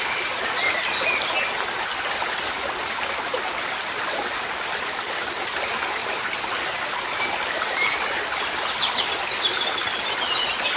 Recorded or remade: recorded